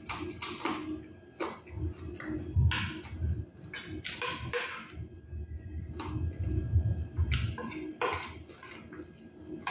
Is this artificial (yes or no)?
no